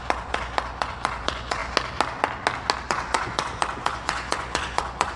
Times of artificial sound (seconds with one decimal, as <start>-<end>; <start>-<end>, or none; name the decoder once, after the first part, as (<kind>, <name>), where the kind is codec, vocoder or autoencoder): 0.0-1.6 (vocoder, Vocos); 2.9-5.2